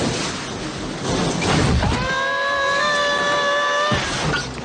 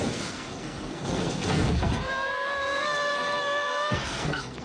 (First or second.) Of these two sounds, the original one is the first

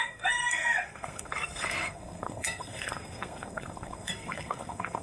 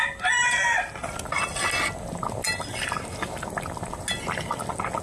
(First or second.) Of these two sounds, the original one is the second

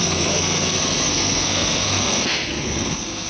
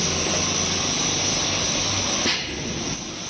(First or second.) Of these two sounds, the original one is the second